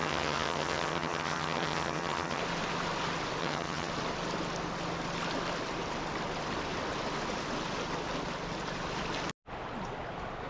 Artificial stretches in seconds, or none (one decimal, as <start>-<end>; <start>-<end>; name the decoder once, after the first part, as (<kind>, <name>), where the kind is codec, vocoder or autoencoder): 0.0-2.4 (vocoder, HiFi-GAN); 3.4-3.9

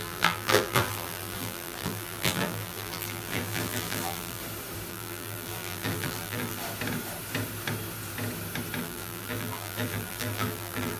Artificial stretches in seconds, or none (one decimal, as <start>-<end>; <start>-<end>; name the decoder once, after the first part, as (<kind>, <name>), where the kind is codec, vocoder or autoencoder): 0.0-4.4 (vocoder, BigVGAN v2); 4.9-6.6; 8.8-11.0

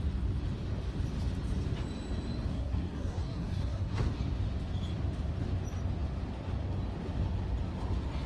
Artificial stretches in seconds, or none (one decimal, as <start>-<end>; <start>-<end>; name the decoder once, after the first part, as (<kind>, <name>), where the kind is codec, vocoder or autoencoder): 2.5-4.1 (codec, SNAC)

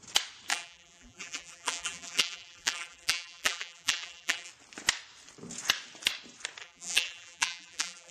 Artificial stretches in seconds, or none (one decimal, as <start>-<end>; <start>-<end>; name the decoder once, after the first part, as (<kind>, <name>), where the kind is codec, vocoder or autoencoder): 0.5-4.5 (vocoder, BigVGAN v2); 6.6-8.1

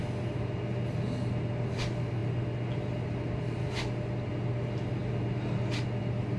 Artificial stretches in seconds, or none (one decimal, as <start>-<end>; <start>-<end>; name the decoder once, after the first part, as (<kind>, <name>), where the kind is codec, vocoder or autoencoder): none

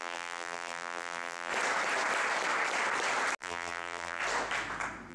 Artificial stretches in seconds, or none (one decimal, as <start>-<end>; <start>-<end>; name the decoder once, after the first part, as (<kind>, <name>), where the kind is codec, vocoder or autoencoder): 0.0-1.5 (vocoder, BigVGAN v2); 3.4-4.2

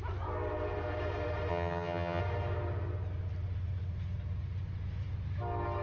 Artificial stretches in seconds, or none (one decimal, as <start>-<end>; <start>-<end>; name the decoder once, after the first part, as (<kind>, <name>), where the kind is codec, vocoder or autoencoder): 1.5-2.2 (vocoder, HiFi-GAN)

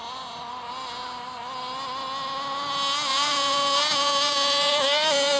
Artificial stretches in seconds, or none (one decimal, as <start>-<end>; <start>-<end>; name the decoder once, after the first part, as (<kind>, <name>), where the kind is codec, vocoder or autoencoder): 3.1-5.4 (vocoder, Vocos)